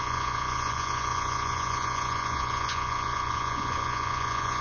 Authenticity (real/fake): fake